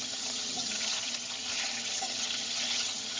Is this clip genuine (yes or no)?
no